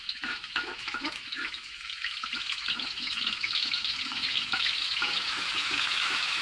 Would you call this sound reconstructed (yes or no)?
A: yes